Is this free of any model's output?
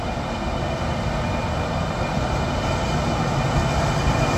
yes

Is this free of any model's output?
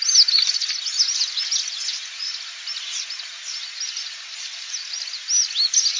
yes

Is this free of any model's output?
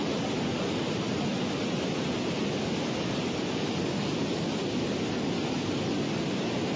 yes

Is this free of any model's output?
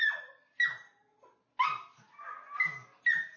yes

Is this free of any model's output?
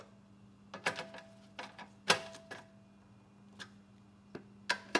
yes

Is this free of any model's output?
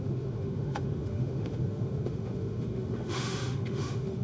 no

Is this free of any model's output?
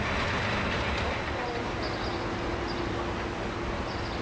yes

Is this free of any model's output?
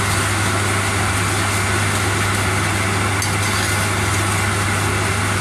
yes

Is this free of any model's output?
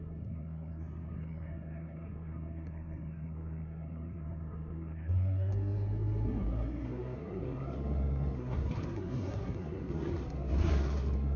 no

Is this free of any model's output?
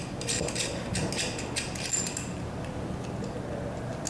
yes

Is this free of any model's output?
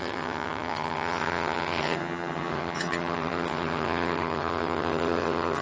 no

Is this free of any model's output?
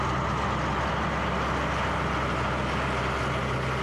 yes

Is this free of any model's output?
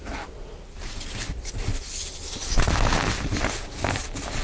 yes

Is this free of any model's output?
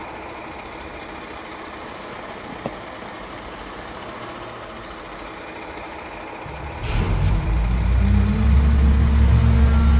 yes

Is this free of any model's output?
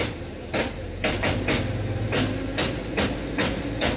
yes